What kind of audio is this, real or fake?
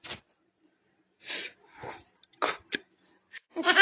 real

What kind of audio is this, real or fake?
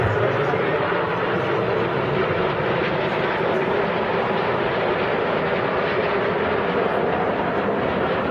real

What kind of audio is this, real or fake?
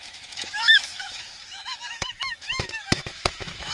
fake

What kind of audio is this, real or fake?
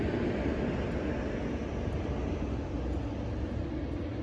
real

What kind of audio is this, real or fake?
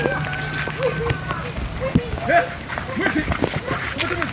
real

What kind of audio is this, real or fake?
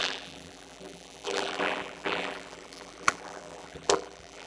fake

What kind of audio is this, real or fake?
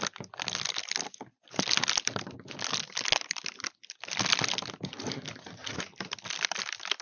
real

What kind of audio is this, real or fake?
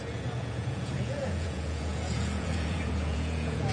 fake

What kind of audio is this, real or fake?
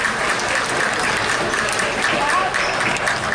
real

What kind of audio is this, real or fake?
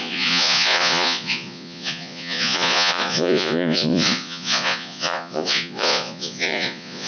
fake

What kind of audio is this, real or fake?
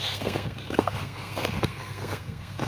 fake